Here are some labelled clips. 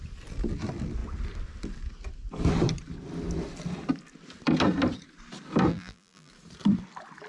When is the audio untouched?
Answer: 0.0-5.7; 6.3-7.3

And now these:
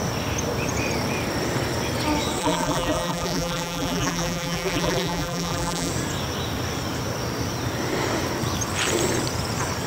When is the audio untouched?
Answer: 0.0-2.4; 5.9-9.9

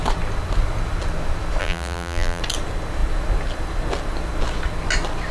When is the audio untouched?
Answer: 0.0-1.6; 2.4-5.3

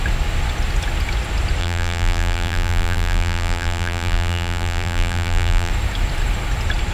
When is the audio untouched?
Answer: 0.0-1.6; 5.7-6.9

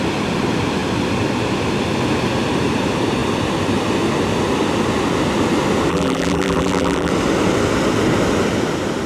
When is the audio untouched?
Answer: 0.0-5.9; 7.1-9.1

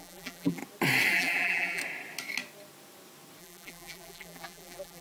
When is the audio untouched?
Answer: 0.6-1.1; 1.8-3.4

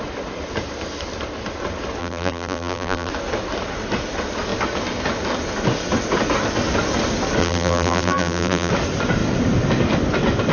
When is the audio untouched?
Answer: 0.0-2.0; 3.1-7.4; 8.7-10.5

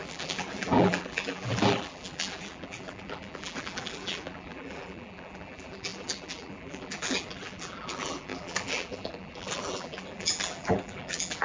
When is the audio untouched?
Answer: none